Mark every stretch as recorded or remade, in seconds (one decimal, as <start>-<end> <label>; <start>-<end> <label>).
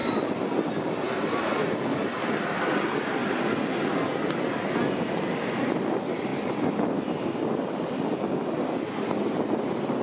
0.0-10.0 recorded